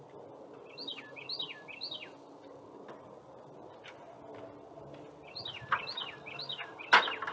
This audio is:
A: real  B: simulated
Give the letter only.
A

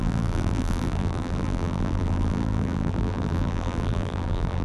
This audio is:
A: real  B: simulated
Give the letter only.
B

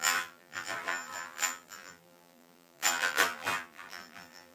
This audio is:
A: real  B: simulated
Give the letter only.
B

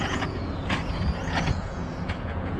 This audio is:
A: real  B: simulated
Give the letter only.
B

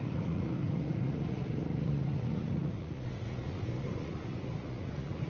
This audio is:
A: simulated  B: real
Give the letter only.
A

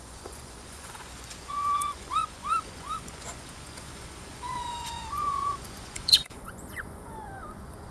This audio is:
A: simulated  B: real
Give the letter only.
A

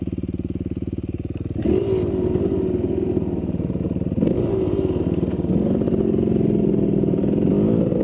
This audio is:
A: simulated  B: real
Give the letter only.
B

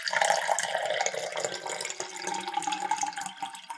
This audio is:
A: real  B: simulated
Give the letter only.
A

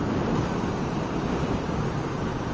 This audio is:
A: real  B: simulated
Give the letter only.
A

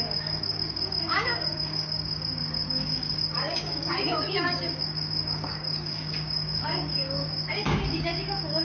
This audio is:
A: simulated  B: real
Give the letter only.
A